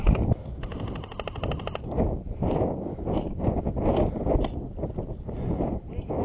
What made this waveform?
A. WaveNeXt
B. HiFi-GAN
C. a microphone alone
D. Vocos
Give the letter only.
C